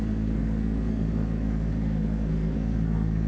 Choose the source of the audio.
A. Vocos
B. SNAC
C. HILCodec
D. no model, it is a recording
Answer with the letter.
B